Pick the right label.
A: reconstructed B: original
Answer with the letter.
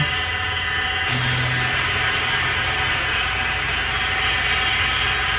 B